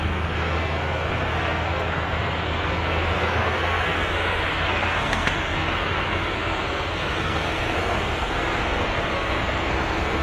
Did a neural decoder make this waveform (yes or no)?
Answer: yes